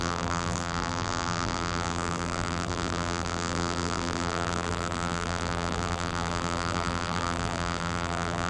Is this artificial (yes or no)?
yes